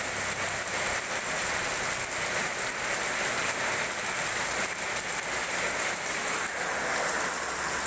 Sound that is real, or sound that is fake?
real